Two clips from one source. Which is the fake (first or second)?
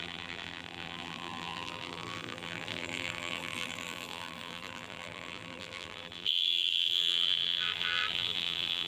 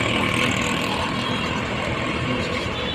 first